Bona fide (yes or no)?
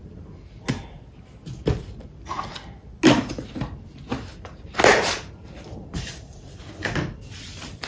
yes